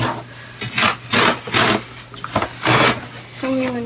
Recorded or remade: recorded